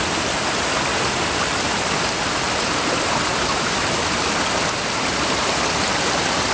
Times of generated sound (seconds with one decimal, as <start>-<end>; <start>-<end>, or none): 3.3-5.8